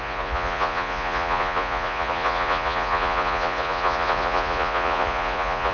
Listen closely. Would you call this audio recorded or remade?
remade